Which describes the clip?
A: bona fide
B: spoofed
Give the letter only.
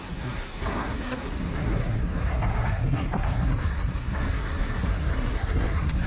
B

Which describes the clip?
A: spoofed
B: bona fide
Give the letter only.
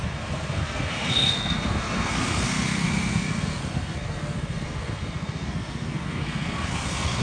A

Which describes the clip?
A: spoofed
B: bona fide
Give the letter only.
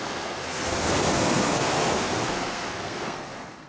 A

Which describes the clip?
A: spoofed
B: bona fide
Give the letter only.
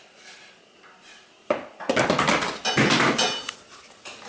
B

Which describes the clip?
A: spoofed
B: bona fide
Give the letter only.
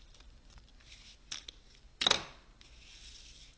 B